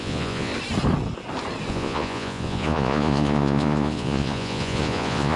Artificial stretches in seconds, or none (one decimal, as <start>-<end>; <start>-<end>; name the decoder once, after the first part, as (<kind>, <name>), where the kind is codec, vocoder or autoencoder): 0.0-0.5 (vocoder, Vocos); 1.7-5.4